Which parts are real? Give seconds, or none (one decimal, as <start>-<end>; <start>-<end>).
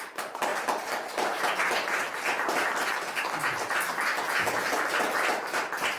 0.0-6.0